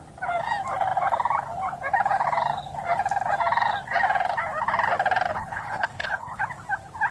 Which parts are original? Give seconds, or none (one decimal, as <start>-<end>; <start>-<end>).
0.0-5.3; 6.4-7.1